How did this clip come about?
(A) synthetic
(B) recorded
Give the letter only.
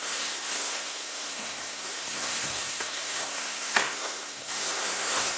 A